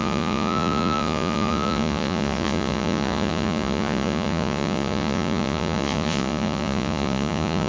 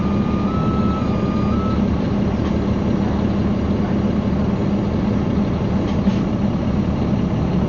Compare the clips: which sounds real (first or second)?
second